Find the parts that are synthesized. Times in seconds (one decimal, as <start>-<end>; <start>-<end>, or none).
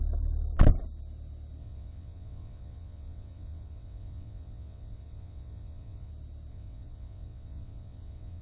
1.6-6.1; 6.5-8.4